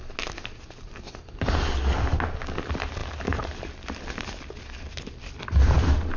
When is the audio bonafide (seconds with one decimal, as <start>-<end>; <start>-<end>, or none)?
0.0-6.2